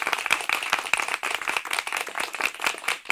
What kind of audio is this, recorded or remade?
remade